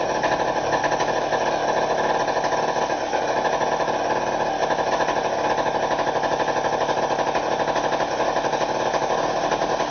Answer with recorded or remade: recorded